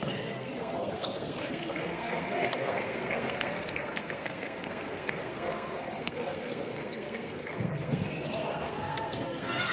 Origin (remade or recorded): remade